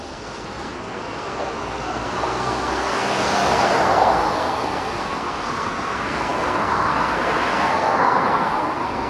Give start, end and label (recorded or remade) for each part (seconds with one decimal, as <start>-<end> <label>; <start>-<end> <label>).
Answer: 0.0-9.1 remade